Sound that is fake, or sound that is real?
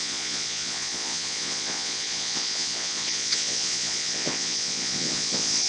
fake